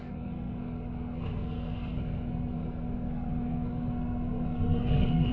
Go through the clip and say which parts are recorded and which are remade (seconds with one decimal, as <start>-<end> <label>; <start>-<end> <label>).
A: 0.0-5.3 remade